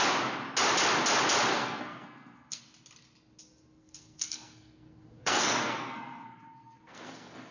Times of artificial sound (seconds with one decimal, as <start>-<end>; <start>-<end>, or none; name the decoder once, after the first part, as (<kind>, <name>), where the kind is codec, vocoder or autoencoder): 1.5-2.6 (codec, SNAC); 3.8-7.5

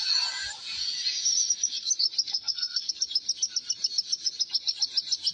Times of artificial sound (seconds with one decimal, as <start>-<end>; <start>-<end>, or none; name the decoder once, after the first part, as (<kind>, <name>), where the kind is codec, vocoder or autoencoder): 2.3-2.9 (codec, SNAC)

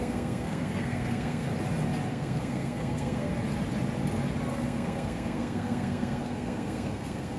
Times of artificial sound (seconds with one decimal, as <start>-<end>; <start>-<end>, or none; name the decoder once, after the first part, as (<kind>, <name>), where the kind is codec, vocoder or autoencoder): 0.0-1.5 (codec, SNAC); 2.1-3.3; 4.5-7.4